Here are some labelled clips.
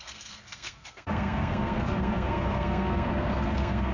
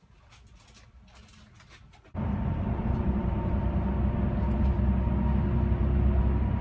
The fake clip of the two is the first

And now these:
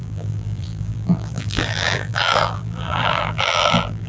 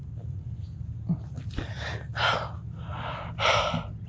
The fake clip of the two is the first